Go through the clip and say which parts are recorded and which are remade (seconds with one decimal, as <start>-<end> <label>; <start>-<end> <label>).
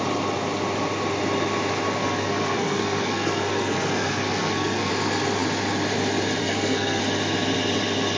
0.0-2.0 recorded; 2.0-4.9 remade; 4.9-6.4 recorded; 6.4-7.0 remade; 7.0-8.2 recorded